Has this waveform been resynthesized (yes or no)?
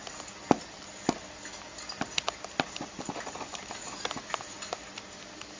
no